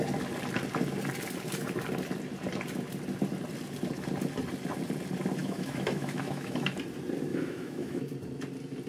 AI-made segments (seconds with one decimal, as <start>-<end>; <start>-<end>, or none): 5.4-6.7; 7.3-8.0